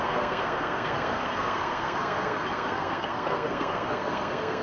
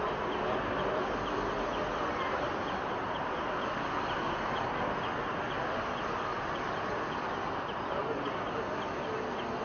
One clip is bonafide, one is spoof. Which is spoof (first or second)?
first